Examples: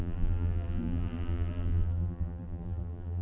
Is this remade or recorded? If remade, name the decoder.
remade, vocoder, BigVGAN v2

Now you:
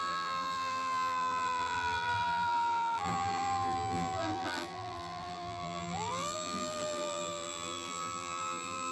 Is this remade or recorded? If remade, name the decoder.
remade, vocoder, BigVGAN v2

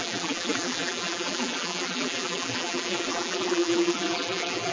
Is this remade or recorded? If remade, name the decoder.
remade, vocoder, BigVGAN v2